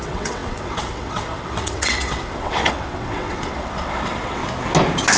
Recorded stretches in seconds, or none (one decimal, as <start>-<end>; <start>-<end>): 4.4-5.2